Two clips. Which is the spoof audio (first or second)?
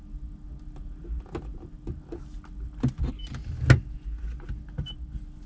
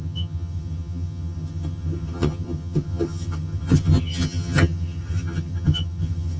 second